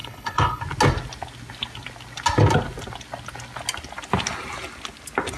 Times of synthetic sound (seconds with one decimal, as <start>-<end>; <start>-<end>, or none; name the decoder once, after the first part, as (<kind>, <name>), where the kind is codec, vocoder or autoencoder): 0.0-0.6 (codec, HILCodec)